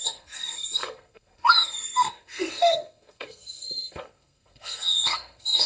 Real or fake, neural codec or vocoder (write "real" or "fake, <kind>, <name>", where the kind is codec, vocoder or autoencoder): fake, codec, SNAC